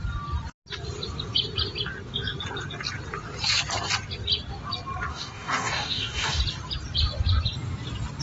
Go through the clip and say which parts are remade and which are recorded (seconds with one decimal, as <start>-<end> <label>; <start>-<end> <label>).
0.0-5.1 recorded; 5.1-6.4 remade; 6.4-8.2 recorded